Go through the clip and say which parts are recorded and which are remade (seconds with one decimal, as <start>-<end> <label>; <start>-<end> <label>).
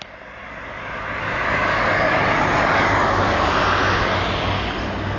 0.0-0.4 recorded; 0.4-3.5 remade; 3.5-5.2 recorded